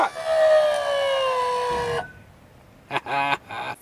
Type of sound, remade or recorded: recorded